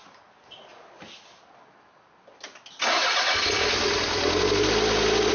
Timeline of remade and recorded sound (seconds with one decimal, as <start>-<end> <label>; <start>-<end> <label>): 0.0-5.3 recorded